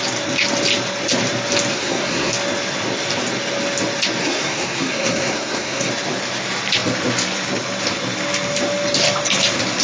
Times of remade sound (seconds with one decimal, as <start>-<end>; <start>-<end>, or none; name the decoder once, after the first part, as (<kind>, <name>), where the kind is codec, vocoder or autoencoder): 1.7-2.3 (codec, SNAC); 4.2-5.9